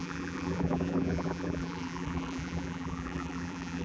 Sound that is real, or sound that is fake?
fake